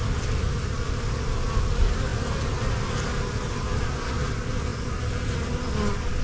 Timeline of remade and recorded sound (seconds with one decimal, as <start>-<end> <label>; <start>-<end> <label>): 0.0-6.2 recorded